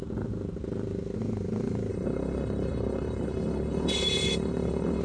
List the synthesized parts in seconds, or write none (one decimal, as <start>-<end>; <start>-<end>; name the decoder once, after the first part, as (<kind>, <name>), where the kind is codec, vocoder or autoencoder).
1.9-5.0 (codec, HILCodec)